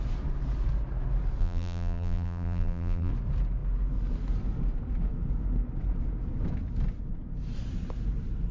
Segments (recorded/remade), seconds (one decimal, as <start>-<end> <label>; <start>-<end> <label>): 0.0-1.4 recorded; 1.4-3.1 remade; 3.1-8.5 recorded